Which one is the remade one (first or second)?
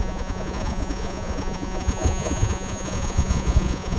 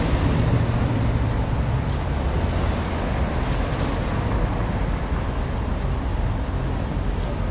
first